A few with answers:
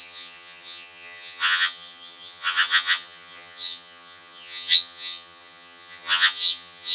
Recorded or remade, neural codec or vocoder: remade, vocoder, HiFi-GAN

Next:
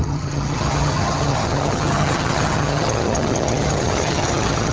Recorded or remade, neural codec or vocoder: remade, vocoder, HiFi-GAN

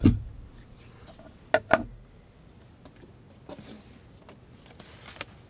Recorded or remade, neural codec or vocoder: recorded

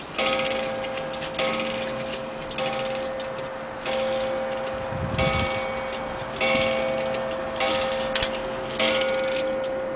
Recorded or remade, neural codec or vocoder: recorded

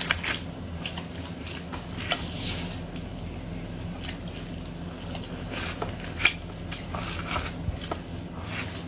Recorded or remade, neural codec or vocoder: recorded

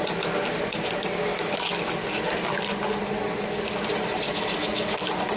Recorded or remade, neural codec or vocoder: recorded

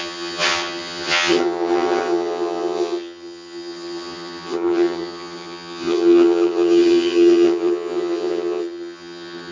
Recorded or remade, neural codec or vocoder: remade, vocoder, HiFi-GAN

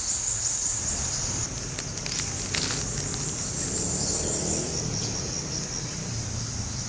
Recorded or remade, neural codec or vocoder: recorded